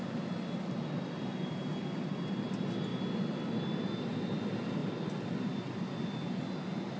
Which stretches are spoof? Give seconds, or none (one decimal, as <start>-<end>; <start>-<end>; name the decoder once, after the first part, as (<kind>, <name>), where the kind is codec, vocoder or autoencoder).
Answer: none

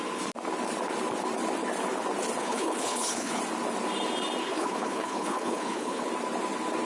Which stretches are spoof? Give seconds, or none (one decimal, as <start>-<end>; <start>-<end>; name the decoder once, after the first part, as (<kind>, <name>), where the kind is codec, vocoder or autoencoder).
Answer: 2.4-3.4 (codec, HILCodec); 4.4-6.1

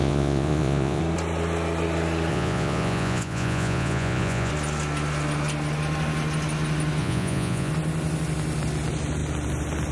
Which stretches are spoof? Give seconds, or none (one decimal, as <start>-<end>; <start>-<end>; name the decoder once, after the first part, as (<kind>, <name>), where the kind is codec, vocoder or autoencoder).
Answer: 0.0-1.0 (vocoder, Vocos); 2.3-4.5; 7.0-7.7

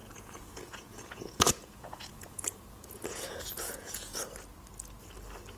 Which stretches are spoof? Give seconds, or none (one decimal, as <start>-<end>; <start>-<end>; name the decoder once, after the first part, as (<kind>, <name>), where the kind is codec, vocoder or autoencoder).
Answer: 0.0-4.2 (vocoder, Vocos)

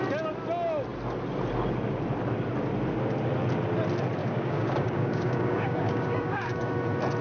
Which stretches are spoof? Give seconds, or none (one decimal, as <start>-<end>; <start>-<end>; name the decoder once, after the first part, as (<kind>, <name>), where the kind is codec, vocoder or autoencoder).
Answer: 4.2-6.7 (codec, DAC)

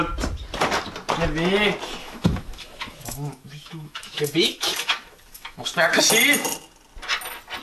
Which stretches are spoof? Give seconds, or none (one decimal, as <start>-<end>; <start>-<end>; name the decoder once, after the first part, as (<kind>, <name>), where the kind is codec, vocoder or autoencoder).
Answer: 2.0-6.0 (autoencoder, DAC-VAE)